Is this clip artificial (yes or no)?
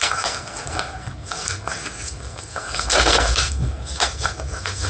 yes